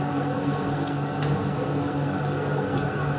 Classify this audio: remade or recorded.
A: remade